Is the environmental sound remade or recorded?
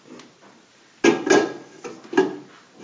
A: recorded